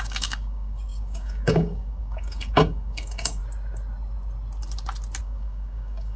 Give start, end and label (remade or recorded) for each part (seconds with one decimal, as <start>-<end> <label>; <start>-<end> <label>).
0.0-3.4 remade; 3.4-5.2 recorded; 5.2-6.2 remade